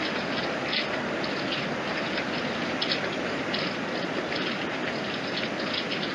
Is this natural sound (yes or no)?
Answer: yes